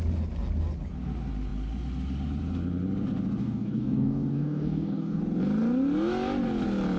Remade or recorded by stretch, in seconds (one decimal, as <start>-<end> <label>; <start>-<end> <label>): 0.0-3.4 recorded; 3.4-5.2 remade; 5.2-7.0 recorded